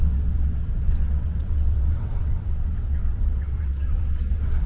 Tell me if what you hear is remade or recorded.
remade